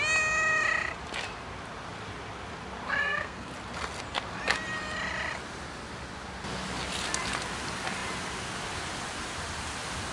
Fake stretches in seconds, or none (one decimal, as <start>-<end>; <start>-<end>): 3.0-3.5